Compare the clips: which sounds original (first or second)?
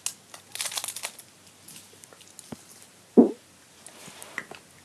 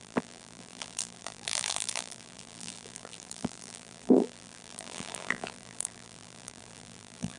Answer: first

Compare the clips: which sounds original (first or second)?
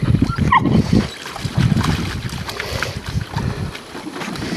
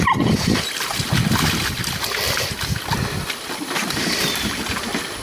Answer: first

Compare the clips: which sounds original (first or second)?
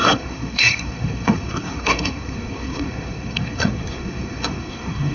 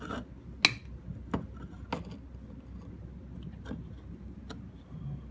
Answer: second